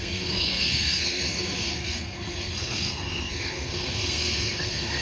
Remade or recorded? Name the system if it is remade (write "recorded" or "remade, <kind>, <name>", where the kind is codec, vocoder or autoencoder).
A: remade, codec, SNAC